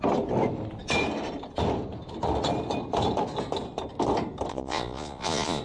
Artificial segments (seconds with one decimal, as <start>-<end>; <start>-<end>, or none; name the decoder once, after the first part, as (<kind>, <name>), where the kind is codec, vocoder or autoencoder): 4.5-5.6 (vocoder, Vocos)